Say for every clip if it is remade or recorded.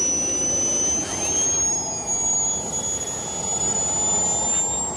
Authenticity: recorded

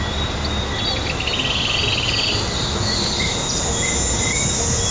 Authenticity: recorded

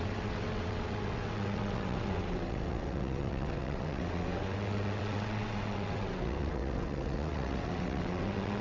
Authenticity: remade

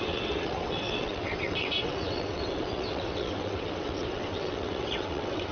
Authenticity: remade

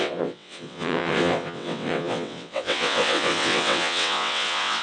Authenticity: remade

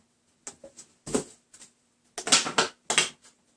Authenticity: recorded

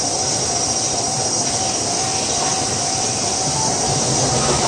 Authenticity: recorded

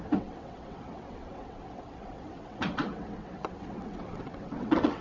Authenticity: remade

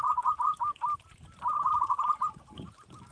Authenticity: recorded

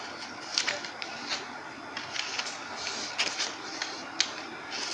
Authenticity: recorded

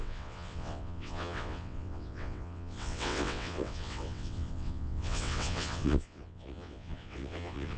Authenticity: remade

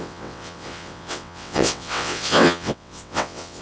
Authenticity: remade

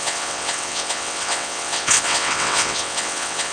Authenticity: remade